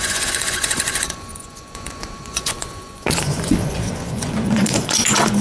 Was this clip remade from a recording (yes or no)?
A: yes